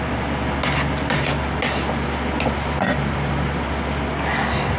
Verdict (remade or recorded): recorded